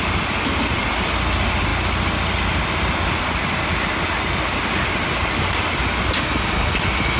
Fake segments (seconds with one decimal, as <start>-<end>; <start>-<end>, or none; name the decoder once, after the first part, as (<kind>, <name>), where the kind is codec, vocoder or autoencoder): none